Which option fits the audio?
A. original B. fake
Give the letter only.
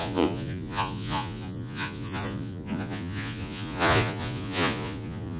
B